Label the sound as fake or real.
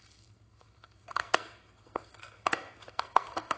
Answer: fake